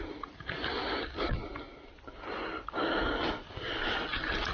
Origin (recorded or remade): recorded